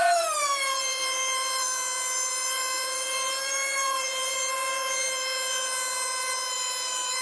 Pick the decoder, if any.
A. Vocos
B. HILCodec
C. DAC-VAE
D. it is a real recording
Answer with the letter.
A